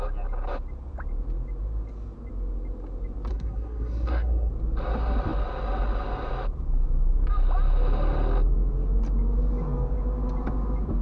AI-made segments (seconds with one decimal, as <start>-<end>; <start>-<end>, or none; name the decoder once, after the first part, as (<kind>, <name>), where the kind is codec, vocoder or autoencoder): 3.3-4.5 (codec, SNAC)